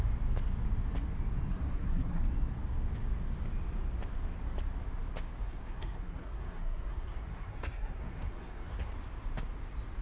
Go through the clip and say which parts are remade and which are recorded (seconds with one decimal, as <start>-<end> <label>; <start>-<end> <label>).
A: 0.0-1.5 recorded; 1.5-2.2 remade; 2.2-5.4 recorded; 5.4-8.9 remade; 8.9-10.0 recorded